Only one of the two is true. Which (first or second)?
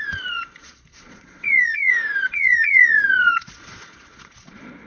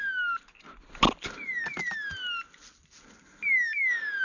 second